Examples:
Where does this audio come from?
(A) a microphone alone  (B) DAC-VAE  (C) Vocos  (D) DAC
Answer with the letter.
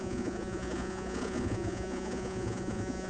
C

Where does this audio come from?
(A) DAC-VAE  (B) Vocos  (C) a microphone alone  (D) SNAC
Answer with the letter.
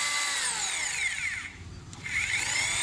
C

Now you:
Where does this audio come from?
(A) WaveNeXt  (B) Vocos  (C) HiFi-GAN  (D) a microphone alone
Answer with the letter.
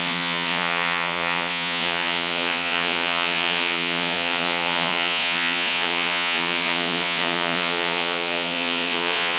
B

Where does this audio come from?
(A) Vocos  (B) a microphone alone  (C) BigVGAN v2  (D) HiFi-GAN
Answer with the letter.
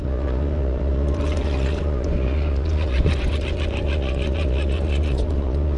A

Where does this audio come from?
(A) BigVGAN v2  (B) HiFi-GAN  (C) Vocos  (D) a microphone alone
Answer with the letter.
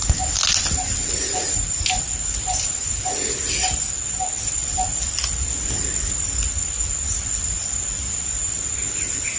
D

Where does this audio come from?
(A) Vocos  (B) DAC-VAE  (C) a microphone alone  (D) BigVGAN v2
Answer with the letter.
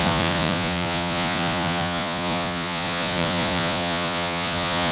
A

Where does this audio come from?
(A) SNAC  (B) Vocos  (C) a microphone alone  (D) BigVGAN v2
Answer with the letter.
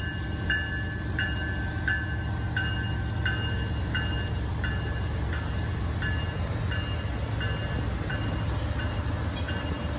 C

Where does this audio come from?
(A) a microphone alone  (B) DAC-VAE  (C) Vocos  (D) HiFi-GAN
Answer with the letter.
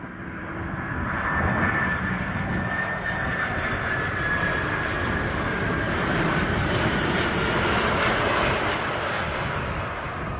A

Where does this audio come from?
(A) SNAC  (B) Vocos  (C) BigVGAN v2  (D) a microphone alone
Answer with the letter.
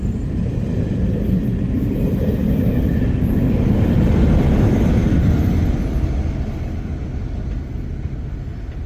D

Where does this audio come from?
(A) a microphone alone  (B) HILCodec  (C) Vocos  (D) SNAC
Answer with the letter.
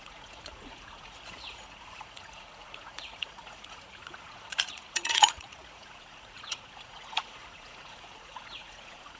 C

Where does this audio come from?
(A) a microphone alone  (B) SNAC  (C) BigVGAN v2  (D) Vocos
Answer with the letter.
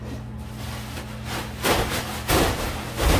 A